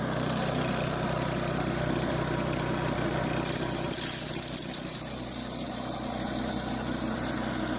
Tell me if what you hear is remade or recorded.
recorded